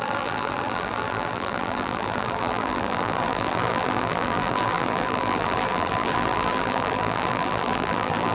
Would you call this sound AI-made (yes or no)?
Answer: yes